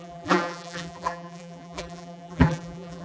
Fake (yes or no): yes